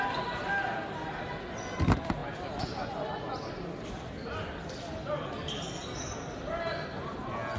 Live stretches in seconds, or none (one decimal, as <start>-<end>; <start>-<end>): 0.0-7.6

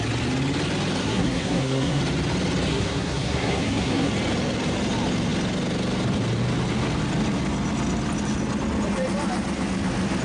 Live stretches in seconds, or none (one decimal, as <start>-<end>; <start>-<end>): 0.0-1.0; 2.0-2.7; 4.1-10.2

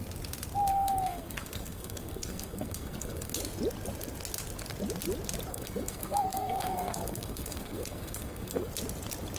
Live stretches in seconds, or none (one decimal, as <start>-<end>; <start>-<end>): 0.0-0.7; 3.4-5.5; 8.7-9.4

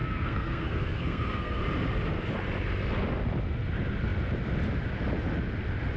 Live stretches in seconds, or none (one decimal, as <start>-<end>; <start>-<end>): 1.6-6.0

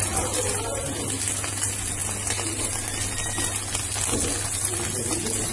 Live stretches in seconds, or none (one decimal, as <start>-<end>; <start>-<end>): 0.0-5.5

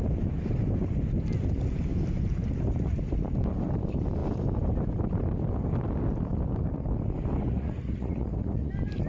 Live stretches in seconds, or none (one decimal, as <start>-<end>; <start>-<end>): 0.0-7.4; 8.7-9.1